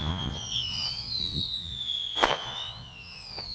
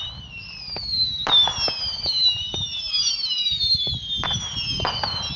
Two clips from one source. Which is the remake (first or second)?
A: first